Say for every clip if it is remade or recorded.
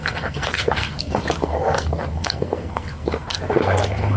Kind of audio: remade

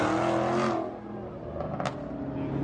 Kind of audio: recorded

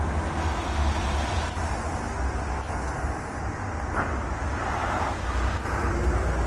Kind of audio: recorded